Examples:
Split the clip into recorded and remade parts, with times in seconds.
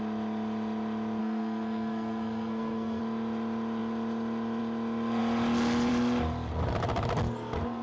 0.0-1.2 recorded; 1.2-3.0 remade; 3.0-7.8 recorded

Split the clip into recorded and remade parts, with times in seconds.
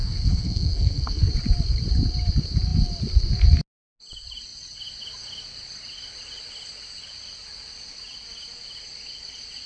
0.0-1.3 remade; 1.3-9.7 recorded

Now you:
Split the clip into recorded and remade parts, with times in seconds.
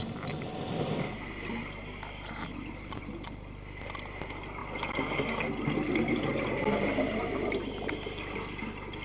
0.0-9.0 recorded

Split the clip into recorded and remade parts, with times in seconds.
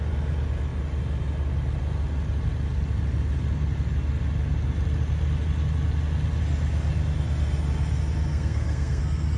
0.0-8.3 recorded; 8.3-9.0 remade; 9.0-9.4 recorded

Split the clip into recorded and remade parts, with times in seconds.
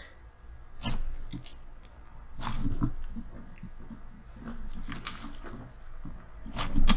0.0-7.0 recorded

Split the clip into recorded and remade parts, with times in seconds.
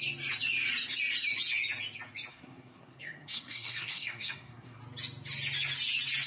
0.0-2.3 recorded; 2.3-4.8 remade; 4.8-6.3 recorded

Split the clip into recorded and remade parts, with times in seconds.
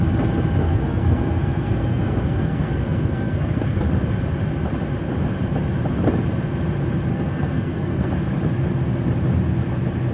0.0-0.6 recorded; 0.6-3.9 remade; 3.9-7.1 recorded; 7.1-8.1 remade; 8.1-10.1 recorded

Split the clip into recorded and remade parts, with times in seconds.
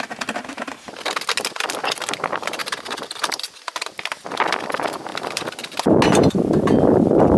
0.0-7.4 recorded